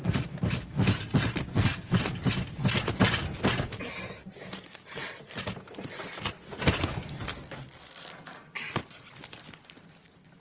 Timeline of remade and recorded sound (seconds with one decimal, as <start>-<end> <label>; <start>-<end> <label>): 0.0-1.5 recorded; 1.5-2.0 remade; 2.0-10.4 recorded